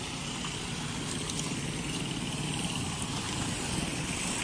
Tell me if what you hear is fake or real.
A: real